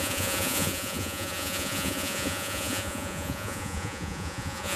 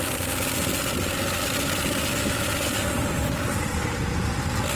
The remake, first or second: first